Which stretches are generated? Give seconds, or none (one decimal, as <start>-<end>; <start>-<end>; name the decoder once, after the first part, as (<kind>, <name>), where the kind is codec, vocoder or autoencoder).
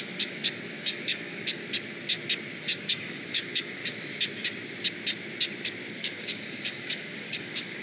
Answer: 0.0-1.6 (codec, DAC); 2.6-3.8; 5.9-7.8